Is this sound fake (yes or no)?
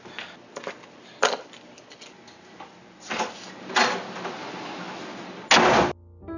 no